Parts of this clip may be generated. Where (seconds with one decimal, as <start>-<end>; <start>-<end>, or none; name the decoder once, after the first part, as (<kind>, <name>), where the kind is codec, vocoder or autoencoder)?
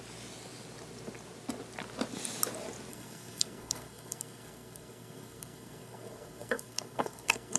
2.9-7.6 (codec, SNAC)